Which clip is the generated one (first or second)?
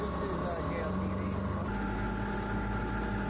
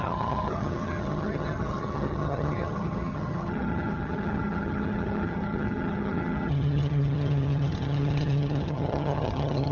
second